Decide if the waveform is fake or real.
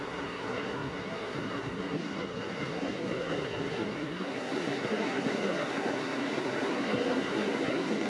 fake